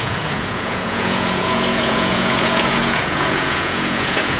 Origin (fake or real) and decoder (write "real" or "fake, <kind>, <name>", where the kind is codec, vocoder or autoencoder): fake, vocoder, Vocos